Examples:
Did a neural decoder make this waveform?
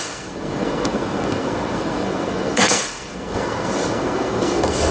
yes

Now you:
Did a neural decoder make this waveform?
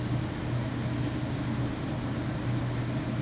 no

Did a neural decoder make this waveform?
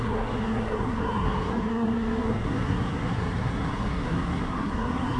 yes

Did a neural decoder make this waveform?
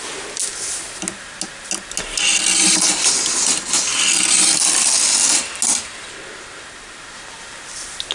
no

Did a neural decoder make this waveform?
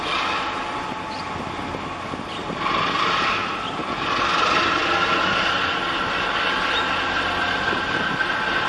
no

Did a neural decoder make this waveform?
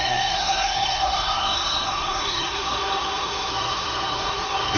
yes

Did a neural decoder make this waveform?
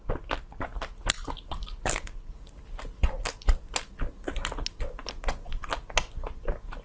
no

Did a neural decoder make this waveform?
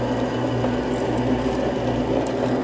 no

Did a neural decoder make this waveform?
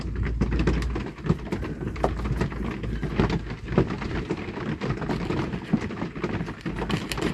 no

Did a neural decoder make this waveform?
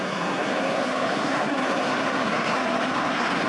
yes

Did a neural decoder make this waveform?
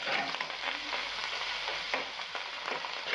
no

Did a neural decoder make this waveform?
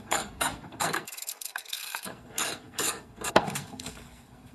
yes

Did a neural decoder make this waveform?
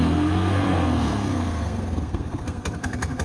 yes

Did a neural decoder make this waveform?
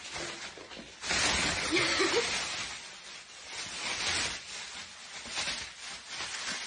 no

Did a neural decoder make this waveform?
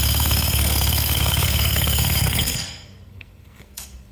yes